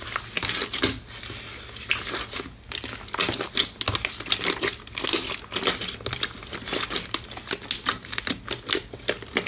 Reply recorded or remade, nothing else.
recorded